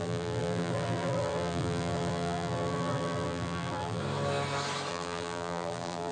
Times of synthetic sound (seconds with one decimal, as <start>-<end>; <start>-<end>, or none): 0.0-4.0; 4.9-6.1